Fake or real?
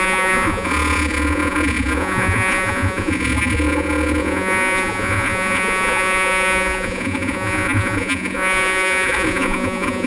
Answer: fake